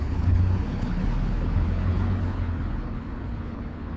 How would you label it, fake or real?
fake